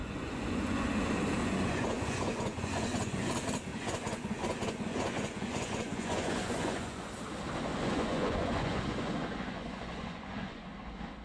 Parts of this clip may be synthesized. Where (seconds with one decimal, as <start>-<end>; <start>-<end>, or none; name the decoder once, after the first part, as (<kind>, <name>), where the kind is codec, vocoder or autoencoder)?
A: 0.0-0.9 (vocoder, Vocos); 1.4-3.3; 3.7-7.1; 7.7-10.7

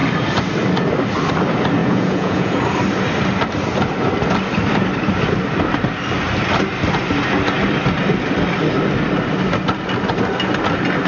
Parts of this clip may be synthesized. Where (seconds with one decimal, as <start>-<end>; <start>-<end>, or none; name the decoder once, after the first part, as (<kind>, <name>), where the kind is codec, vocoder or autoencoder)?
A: 1.8-2.6 (vocoder, Vocos)

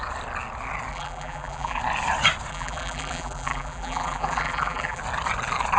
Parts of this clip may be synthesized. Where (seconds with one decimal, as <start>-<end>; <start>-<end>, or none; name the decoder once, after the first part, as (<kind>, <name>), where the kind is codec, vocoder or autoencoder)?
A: 0.9-1.8 (vocoder, BigVGAN v2); 2.5-5.0

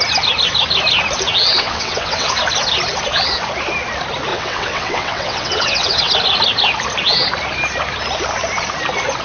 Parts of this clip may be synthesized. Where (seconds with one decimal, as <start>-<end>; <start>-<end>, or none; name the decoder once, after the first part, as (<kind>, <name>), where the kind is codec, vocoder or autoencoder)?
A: 1.5-2.4 (vocoder, WaveNeXt); 4.3-6.1

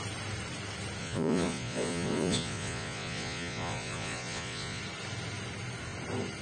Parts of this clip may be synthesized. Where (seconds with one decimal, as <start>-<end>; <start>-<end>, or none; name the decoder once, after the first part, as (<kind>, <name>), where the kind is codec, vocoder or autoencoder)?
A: 1.0-4.8 (vocoder, Vocos)

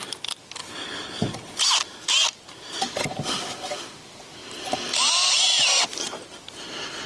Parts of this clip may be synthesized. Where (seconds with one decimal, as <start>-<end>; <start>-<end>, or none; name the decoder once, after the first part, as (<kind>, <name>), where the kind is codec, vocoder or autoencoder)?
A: 0.6-1.6 (codec, HILCodec)

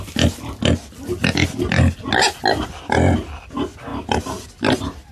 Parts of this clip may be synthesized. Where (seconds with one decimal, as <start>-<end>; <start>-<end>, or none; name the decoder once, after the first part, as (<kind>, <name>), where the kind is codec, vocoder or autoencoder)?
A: 3.9-5.1 (vocoder, BigVGAN v2)

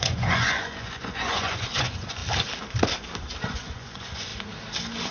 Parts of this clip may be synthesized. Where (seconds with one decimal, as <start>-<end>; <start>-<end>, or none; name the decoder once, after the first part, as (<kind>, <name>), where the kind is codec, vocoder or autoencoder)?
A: 0.0-2.2 (vocoder, Vocos); 3.5-4.3